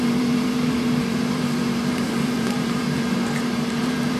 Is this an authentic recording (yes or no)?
no